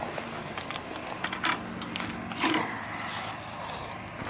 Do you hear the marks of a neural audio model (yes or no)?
no